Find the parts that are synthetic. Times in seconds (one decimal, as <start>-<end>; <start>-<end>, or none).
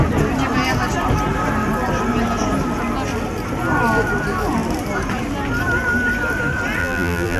6.8-7.4